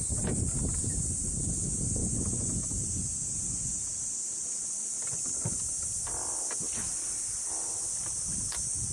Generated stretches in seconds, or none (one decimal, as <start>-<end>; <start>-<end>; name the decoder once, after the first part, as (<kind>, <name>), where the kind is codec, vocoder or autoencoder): 2.0-2.7 (vocoder, Vocos)